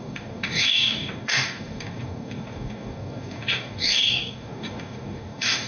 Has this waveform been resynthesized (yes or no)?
yes